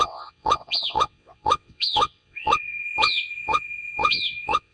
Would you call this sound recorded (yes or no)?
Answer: no